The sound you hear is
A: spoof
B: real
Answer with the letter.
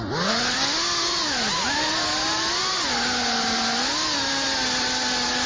B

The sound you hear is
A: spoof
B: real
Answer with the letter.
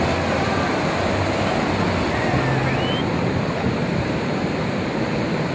B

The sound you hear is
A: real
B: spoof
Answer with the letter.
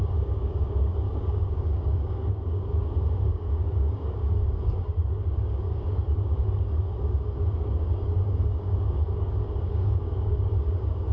B